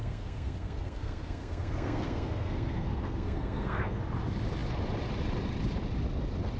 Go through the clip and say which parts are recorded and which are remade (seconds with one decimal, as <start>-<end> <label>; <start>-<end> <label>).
0.0-4.0 remade; 4.0-6.6 recorded